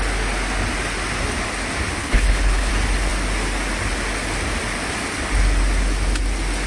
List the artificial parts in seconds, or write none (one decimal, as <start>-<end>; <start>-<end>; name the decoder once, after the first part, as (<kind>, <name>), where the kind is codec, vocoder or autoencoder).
2.0-2.7 (codec, HILCodec)